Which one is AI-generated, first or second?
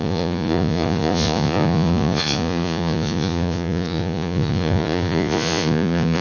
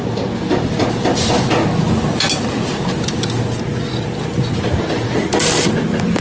first